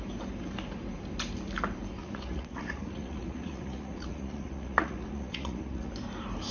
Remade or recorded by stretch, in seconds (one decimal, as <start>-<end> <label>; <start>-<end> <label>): 0.0-2.0 recorded; 2.0-5.9 remade; 5.9-6.5 recorded